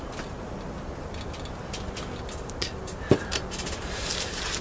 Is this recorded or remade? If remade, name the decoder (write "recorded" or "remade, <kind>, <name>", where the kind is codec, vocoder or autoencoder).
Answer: recorded